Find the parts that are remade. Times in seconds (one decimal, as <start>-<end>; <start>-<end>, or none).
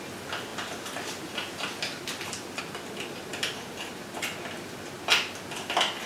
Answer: none